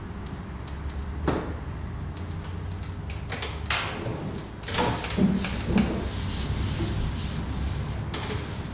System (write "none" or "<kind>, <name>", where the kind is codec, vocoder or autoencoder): none